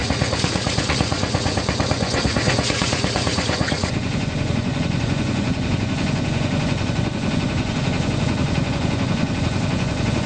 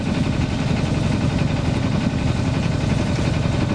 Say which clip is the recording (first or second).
second